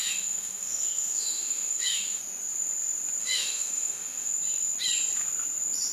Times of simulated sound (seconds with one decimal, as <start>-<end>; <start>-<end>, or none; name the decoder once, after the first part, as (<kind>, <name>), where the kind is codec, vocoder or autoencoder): 0.0-2.2 (autoencoder, DAC-VAE); 3.2-4.3